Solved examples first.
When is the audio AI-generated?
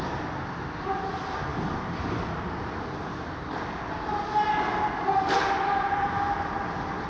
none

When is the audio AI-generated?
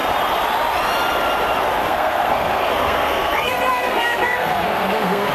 1.8-5.3 (codec, SNAC)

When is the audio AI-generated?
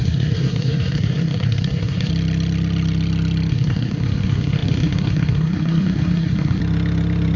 0.0-2.1 (codec, SNAC); 3.5-6.6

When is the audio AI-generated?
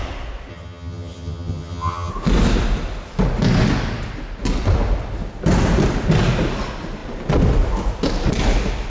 0.5-2.1 (vocoder, HiFi-GAN)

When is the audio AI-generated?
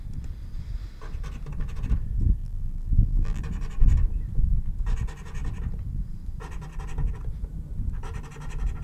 2.4-3.4 (vocoder, BigVGAN v2)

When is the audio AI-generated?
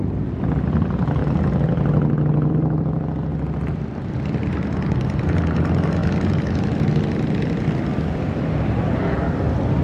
0.0-1.2 (vocoder, BigVGAN v2); 2.5-9.8